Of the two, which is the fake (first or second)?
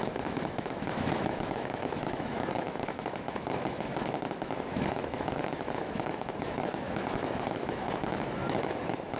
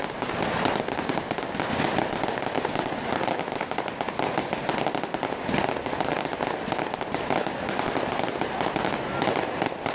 first